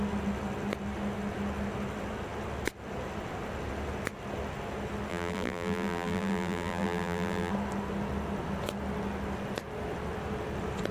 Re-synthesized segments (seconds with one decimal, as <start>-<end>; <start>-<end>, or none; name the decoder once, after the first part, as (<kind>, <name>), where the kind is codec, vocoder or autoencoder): 5.1-7.5 (vocoder, BigVGAN v2)